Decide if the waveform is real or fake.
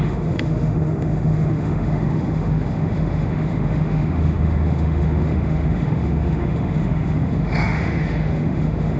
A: fake